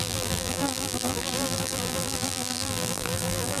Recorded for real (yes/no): no